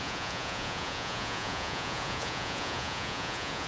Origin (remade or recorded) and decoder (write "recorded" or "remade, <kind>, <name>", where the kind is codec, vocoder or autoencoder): remade, vocoder, Vocos